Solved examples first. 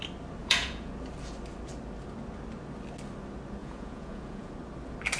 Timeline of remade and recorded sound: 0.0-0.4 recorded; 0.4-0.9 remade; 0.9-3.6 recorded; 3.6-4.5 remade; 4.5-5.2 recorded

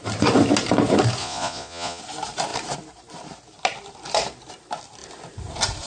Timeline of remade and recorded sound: 0.0-1.2 recorded; 1.2-2.0 remade; 2.0-5.9 recorded

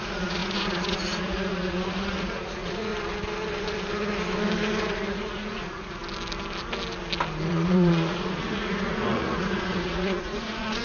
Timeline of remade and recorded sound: 0.0-2.9 remade; 2.9-5.1 recorded; 5.1-6.0 remade; 6.0-7.5 recorded; 7.5-10.8 remade

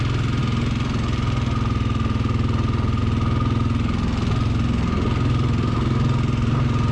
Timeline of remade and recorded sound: 0.0-6.9 recorded

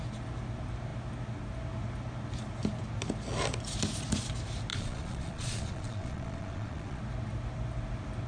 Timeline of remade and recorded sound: 0.0-4.7 recorded; 4.7-7.0 remade; 7.0-8.3 recorded

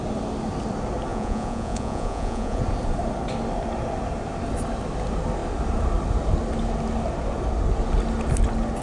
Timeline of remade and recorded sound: 0.0-1.1 recorded; 1.1-2.6 remade; 2.6-8.8 recorded

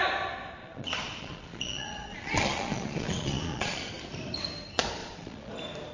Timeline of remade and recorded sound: 0.0-0.6 recorded; 0.6-3.9 remade; 3.9-5.0 recorded; 5.0-5.5 remade; 5.5-5.9 recorded